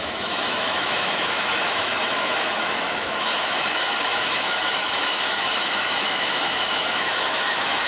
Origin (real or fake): fake